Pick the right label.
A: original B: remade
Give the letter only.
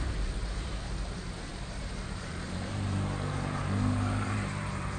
B